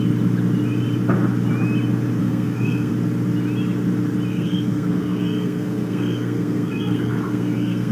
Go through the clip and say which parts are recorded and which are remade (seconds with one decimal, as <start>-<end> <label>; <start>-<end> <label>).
0.0-2.2 recorded; 2.2-2.9 remade; 2.9-4.3 recorded; 4.3-7.9 remade